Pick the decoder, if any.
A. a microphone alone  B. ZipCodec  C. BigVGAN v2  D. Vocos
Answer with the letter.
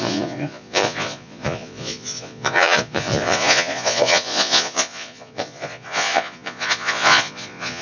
D